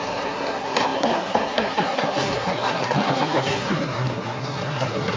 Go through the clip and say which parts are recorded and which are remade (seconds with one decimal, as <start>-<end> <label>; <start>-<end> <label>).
0.0-5.2 remade